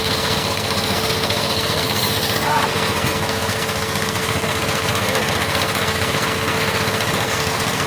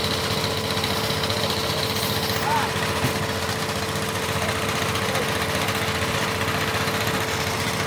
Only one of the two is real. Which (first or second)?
second